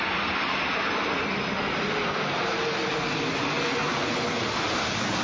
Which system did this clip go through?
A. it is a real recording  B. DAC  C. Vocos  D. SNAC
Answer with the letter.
A